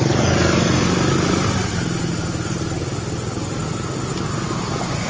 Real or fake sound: real